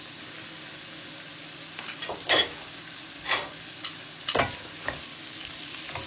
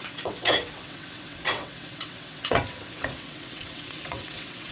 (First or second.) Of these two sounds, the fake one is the second